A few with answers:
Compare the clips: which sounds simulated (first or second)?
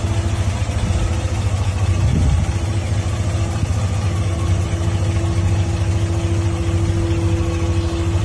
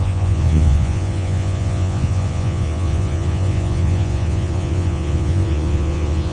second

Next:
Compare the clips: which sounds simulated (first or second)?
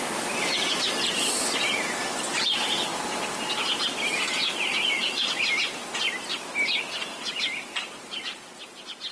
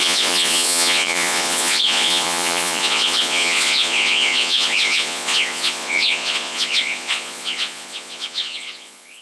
second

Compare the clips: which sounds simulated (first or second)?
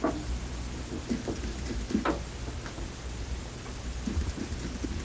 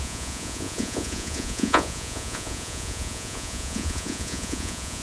second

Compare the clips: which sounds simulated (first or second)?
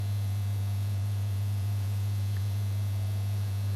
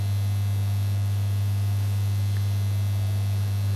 first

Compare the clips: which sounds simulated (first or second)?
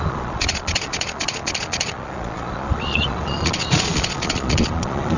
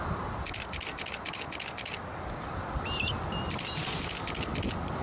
first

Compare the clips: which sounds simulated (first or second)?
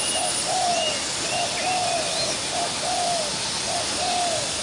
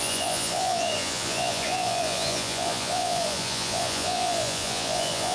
second